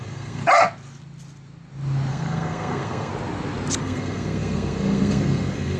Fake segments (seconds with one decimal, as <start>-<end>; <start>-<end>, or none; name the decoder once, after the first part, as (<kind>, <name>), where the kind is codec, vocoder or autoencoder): 0.0-0.4 (codec, SNAC); 2.1-3.1; 3.8-5.8

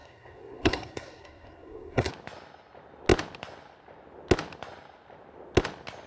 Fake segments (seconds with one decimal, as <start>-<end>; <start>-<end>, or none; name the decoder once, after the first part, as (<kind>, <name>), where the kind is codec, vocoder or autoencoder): 0.0-2.1 (codec, SNAC)

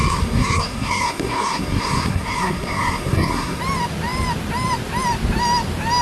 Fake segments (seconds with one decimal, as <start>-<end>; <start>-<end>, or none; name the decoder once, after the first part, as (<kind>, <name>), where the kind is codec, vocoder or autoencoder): 0.0-3.6 (codec, SNAC)

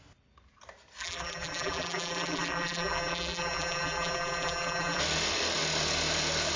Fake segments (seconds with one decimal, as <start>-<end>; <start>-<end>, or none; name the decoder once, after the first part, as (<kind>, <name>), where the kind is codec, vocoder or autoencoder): 1.0-5.0 (vocoder, BigVGAN v2)

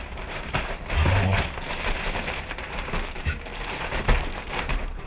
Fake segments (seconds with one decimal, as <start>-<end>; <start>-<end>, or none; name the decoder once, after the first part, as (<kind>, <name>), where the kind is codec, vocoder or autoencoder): 0.0-5.1 (vocoder, BigVGAN v2)

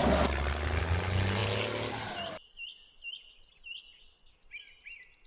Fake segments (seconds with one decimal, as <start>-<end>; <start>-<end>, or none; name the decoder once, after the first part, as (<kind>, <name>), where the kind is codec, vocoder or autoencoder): none

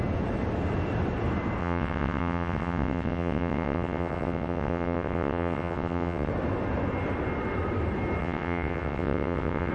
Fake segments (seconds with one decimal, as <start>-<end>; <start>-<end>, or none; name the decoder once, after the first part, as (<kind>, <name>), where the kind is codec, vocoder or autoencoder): 1.6-6.3 (vocoder, WaveNeXt); 8.2-9.7

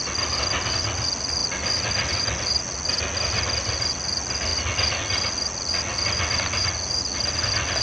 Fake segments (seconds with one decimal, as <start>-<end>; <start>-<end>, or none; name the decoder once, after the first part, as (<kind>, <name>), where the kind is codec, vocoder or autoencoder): none